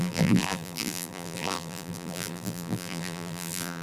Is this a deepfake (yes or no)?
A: yes